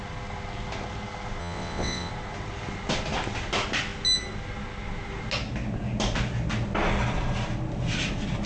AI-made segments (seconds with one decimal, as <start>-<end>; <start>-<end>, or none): 1.4-2.1